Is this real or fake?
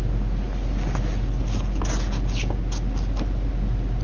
real